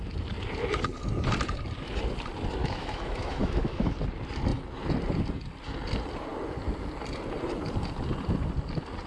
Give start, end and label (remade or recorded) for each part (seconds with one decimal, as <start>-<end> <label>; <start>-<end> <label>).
0.0-2.6 recorded; 2.6-3.9 remade; 3.9-9.1 recorded